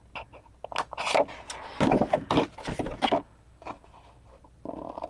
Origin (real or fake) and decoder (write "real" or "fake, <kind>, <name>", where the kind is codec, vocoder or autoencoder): real